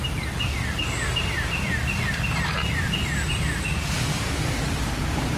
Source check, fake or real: real